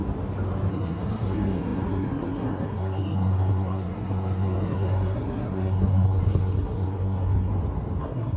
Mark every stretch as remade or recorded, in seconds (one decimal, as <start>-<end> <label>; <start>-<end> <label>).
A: 0.0-0.7 recorded; 0.7-7.5 remade; 7.5-8.0 recorded; 8.0-8.4 remade